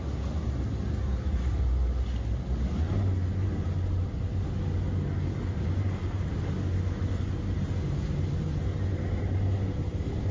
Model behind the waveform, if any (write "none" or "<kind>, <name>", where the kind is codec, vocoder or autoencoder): none